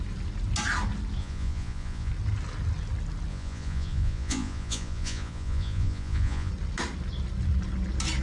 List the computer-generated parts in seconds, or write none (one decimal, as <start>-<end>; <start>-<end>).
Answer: 1.2-2.1; 3.3-6.5